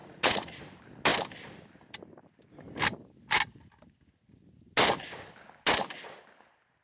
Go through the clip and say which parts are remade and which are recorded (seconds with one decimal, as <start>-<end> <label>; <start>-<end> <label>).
0.0-0.6 remade; 0.6-6.8 recorded